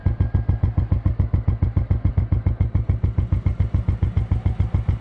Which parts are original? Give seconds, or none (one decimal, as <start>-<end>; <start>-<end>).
0.0-5.0